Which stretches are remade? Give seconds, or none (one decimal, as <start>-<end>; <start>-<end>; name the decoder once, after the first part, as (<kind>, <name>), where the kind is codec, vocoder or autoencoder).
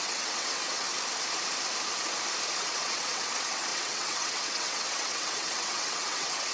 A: 0.0-0.9 (vocoder, WaveNeXt); 2.6-6.5